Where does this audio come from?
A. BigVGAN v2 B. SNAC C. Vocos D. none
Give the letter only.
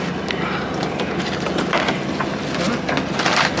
D